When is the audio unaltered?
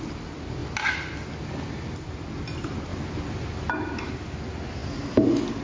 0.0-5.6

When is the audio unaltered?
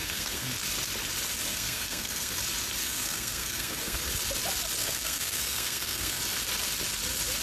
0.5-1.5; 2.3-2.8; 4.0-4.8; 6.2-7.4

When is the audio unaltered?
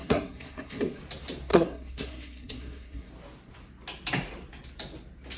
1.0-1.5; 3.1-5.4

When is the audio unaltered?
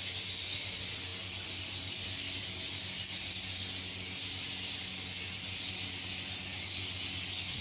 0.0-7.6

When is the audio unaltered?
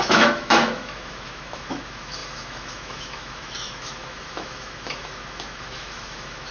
none